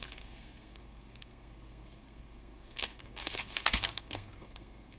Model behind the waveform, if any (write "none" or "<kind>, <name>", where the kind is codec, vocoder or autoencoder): codec, SNAC